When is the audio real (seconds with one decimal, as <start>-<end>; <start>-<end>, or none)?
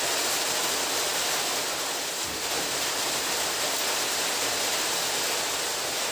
0.0-6.1